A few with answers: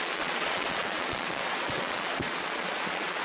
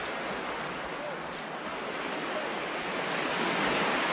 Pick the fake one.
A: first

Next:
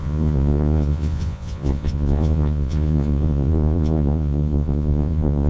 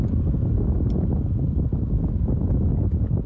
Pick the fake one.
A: first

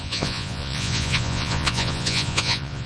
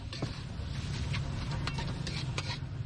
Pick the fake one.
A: first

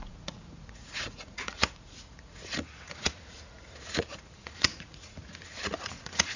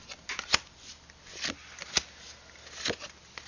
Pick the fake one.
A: first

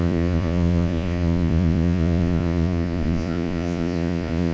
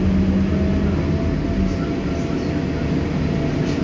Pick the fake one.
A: first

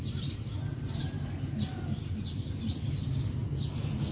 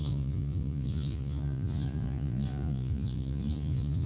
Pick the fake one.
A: second